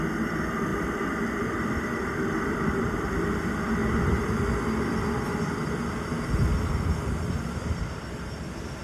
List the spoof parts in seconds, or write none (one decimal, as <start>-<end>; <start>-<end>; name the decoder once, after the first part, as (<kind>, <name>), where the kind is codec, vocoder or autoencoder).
0.0-3.8 (vocoder, BigVGAN v2); 6.7-8.8